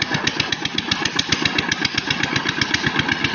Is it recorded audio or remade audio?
recorded